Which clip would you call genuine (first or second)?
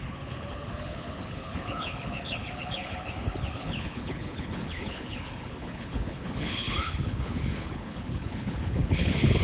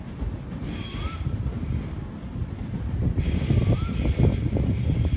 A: second